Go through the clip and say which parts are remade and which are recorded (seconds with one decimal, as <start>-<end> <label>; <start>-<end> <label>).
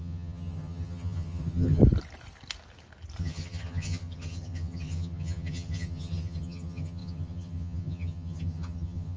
0.0-1.8 remade; 1.8-3.2 recorded; 3.2-9.2 remade